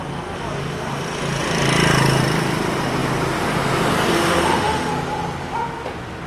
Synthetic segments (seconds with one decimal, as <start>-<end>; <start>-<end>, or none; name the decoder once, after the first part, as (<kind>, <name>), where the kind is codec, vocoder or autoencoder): 4.1-4.9 (autoencoder, DAC-VAE)